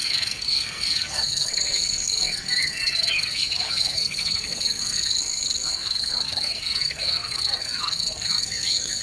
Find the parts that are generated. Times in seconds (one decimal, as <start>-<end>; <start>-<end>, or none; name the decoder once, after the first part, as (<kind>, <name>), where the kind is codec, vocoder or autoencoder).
0.0-9.0 (codec, SNAC)